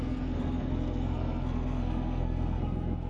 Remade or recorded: remade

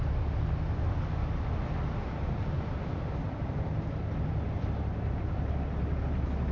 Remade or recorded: recorded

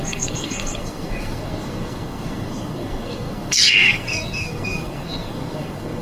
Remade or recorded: remade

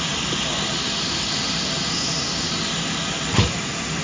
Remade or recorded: recorded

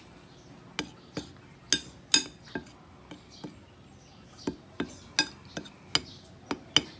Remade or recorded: recorded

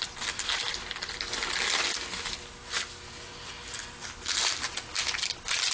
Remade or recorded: recorded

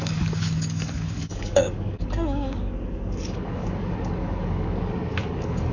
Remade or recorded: remade